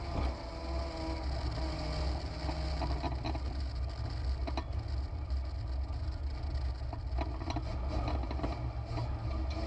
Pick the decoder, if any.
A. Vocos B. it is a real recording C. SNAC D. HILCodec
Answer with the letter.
B